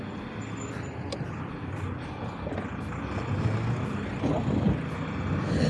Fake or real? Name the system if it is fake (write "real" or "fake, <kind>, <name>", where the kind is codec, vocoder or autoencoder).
real